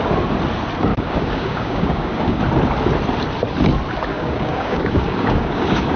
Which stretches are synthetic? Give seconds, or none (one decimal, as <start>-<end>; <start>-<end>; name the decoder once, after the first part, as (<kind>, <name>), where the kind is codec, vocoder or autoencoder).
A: 0.9-2.4 (codec, DAC); 4.1-6.0